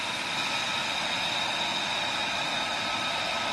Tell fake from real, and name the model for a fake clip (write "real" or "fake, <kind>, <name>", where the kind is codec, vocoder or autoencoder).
real